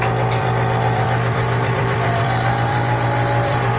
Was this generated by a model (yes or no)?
yes